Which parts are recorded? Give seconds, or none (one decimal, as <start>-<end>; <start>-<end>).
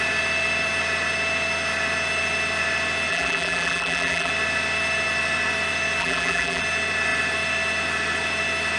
0.0-3.1; 4.3-6.0; 6.6-8.8